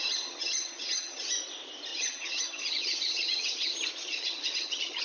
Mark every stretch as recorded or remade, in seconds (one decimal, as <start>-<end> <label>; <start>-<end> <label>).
0.0-1.3 remade; 1.3-1.9 recorded; 1.9-5.0 remade